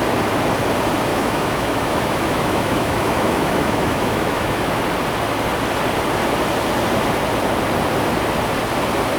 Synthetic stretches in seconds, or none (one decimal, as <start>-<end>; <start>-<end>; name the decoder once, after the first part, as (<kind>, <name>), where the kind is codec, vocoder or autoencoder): 1.1-4.8 (autoencoder, DAC-VAE)